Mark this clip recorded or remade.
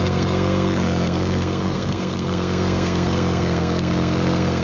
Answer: remade